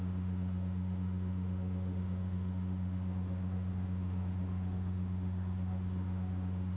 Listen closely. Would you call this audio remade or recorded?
remade